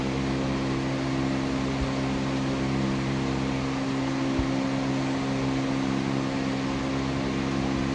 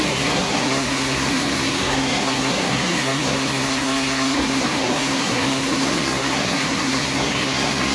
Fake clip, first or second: second